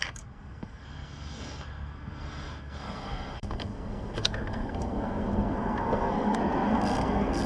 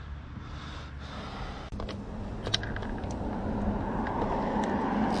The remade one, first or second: first